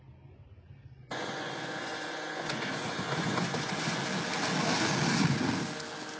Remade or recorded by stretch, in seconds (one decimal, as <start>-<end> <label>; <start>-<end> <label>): 0.0-1.0 recorded; 1.0-4.0 remade; 4.0-6.2 recorded